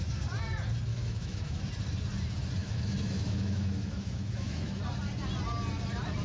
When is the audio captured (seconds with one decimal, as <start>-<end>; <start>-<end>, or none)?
0.0-0.9; 1.6-2.6; 4.8-6.2